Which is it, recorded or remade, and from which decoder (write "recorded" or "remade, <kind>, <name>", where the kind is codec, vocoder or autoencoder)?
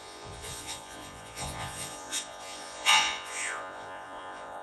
remade, vocoder, Vocos